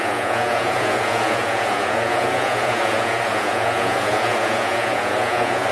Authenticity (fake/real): fake